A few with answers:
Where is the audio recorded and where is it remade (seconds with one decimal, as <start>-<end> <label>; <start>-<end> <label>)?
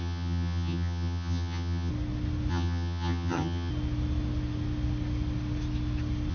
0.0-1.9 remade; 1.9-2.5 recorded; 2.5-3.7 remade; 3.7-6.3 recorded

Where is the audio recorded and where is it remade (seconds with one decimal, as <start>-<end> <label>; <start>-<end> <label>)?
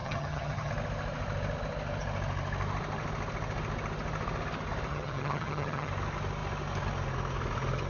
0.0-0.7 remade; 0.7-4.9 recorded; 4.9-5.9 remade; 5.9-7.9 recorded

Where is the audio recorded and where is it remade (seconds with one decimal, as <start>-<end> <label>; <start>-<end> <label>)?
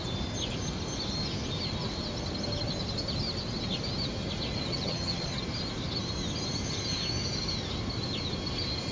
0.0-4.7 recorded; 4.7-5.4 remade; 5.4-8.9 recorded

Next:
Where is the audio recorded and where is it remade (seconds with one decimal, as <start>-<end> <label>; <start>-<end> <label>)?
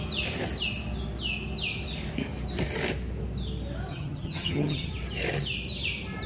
0.0-3.9 recorded; 3.9-4.9 remade; 4.9-6.3 recorded